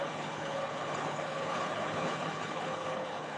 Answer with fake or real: fake